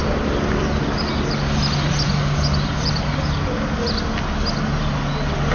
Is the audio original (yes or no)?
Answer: yes